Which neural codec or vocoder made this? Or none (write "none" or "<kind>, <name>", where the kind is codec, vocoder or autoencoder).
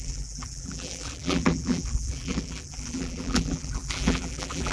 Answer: vocoder, BigVGAN v2